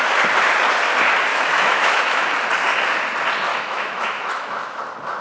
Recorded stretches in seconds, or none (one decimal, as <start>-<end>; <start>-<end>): 0.0-1.3; 2.3-3.5; 4.8-5.2